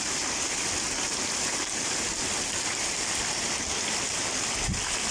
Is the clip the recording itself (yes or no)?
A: yes